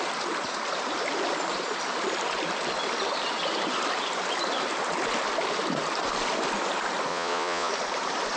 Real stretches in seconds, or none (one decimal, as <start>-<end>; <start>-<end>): 0.0-7.1; 7.7-8.4